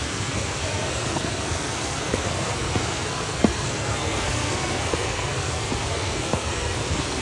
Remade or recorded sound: remade